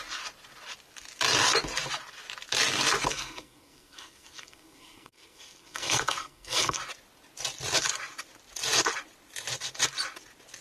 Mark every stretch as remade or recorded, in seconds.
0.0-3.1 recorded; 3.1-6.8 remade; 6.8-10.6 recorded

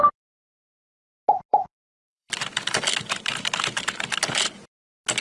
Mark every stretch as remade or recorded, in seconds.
0.0-1.5 recorded; 1.5-3.2 remade; 3.2-5.2 recorded

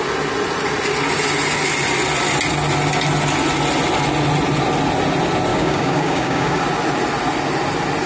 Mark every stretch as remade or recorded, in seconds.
0.0-5.5 recorded; 5.5-6.6 remade; 6.6-8.1 recorded

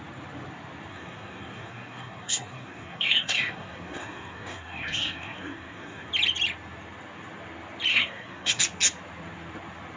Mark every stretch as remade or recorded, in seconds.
0.0-0.9 recorded; 0.9-6.1 remade; 6.1-7.9 recorded; 7.9-8.6 remade; 8.6-10.0 recorded

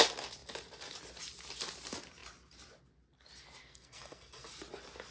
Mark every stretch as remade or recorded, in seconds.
0.0-3.6 recorded; 3.6-4.5 remade; 4.5-5.1 recorded

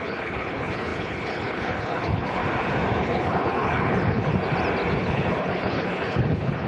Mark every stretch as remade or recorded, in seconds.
0.0-2.4 remade; 2.4-3.0 recorded; 3.0-4.3 remade; 4.3-5.0 recorded; 5.0-6.7 remade